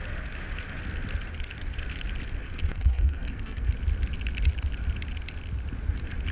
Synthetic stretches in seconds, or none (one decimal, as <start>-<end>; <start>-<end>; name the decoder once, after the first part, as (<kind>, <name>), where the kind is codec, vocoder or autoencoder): 2.4-3.7 (codec, SNAC)